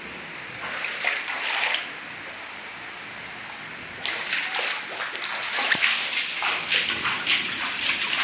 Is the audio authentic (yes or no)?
yes